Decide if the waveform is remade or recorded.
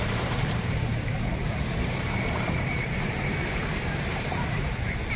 remade